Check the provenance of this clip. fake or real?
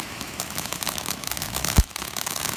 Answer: fake